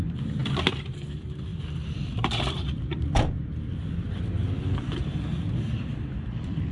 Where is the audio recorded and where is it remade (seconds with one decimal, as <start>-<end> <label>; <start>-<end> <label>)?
0.0-6.7 remade